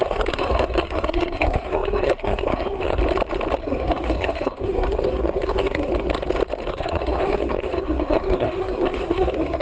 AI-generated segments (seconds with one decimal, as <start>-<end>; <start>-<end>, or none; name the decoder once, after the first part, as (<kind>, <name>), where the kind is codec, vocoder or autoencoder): 0.0-3.0 (codec, SNAC); 3.6-5.9; 6.7-9.6